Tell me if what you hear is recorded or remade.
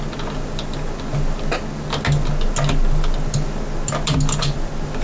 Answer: recorded